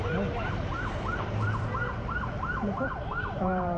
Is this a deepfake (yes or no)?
yes